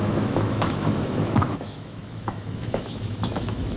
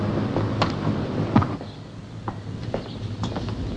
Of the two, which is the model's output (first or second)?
first